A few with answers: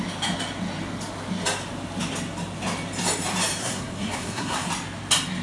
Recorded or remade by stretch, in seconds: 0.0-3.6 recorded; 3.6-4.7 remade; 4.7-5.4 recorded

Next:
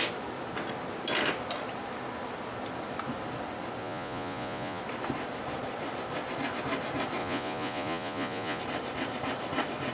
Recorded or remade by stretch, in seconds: 0.0-3.8 recorded; 3.8-4.8 remade; 4.8-7.2 recorded; 7.2-8.6 remade; 8.6-9.9 recorded

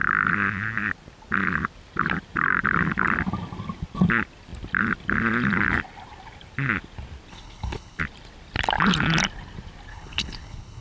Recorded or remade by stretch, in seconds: 0.0-7.3 recorded; 7.3-8.0 remade; 8.0-9.9 recorded; 9.9-10.8 remade

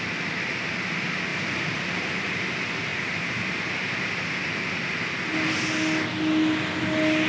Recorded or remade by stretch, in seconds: 0.0-1.3 recorded; 1.3-2.1 remade; 2.1-2.9 recorded; 2.9-4.1 remade; 4.1-7.3 recorded

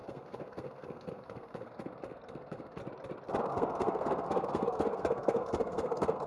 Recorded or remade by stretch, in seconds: 0.0-2.8 remade; 2.8-3.4 recorded; 3.4-6.3 remade

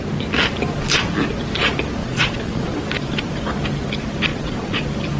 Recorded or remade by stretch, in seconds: 0.0-2.0 recorded; 2.0-2.8 remade; 2.8-4.3 recorded; 4.3-4.8 remade; 4.8-5.2 recorded

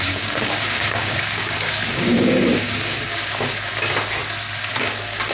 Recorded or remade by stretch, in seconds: 0.0-3.7 remade; 3.7-4.7 recorded; 4.7-5.3 remade

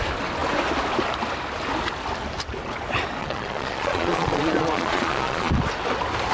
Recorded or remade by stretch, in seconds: 0.0-3.2 recorded; 3.2-5.6 remade; 5.6-6.3 recorded